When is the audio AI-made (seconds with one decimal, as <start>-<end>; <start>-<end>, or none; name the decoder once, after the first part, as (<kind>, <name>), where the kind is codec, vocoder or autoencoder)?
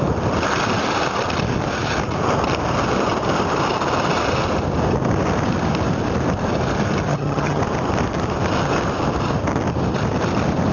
7.1-7.6 (vocoder, HiFi-GAN)